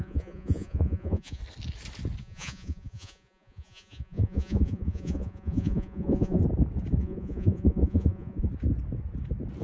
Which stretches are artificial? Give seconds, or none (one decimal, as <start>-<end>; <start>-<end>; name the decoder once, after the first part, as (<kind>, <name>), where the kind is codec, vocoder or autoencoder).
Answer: 0.0-1.4 (vocoder, Vocos); 2.2-6.4; 7.0-8.5